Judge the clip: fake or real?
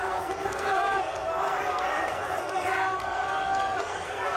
fake